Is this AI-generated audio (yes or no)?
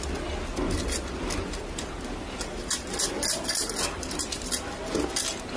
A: no